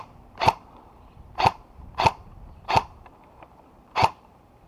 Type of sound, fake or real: fake